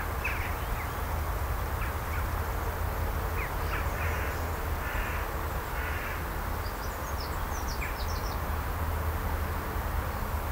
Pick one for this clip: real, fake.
real